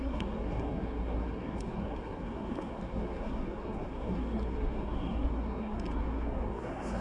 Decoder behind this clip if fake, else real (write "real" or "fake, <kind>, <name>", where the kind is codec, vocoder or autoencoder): fake, codec, SNAC